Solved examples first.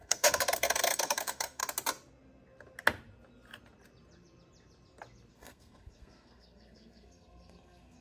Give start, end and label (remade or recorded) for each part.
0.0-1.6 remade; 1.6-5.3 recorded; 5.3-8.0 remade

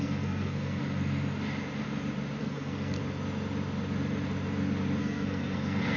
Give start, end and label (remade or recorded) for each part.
0.0-0.8 remade; 0.8-2.4 recorded; 2.4-3.0 remade; 3.0-5.0 recorded; 5.0-6.0 remade

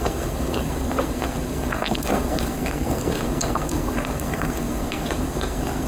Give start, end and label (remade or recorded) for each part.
0.0-5.9 remade